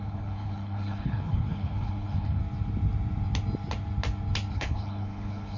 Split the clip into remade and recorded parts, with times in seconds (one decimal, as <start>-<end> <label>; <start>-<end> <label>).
0.0-2.4 remade; 2.4-4.5 recorded; 4.5-5.6 remade